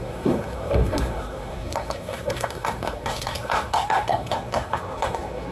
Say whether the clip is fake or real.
fake